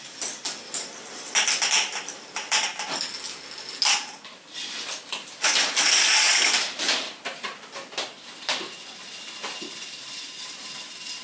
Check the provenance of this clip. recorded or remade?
recorded